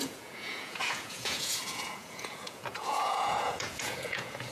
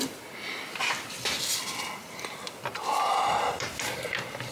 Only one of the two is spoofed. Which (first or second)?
first